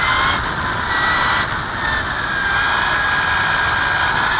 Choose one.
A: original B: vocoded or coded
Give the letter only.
A